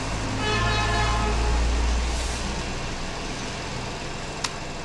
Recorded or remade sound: recorded